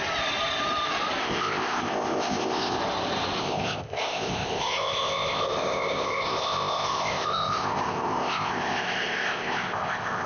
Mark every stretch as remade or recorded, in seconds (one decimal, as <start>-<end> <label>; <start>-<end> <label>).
0.0-1.2 recorded; 1.2-2.8 remade; 2.8-3.4 recorded; 3.4-10.3 remade